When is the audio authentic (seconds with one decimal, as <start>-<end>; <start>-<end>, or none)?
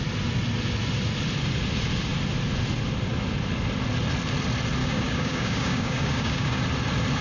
0.0-4.8; 6.6-7.2